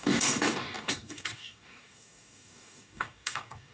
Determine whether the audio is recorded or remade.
remade